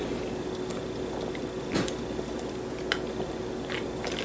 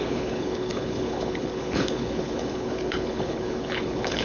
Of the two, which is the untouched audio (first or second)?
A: first